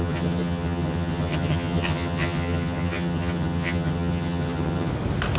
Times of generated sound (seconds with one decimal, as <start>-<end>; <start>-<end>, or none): 0.0-4.9